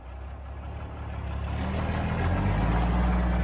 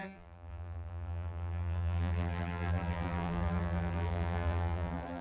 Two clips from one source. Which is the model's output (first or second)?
second